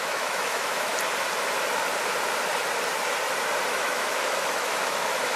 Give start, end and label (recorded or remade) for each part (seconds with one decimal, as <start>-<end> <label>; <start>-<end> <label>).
0.0-0.9 remade; 0.9-3.7 recorded; 3.7-5.4 remade